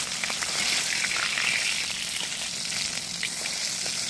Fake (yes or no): no